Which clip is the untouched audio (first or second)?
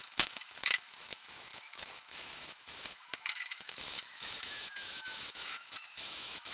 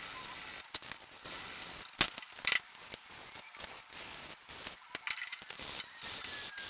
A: second